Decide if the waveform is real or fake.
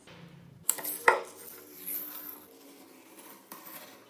real